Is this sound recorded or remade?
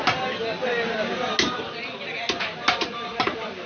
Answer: recorded